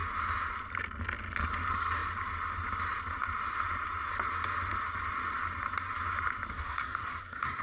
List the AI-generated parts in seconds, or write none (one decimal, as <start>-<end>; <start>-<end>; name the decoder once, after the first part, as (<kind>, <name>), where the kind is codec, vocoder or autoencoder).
6.5-7.6 (codec, SNAC)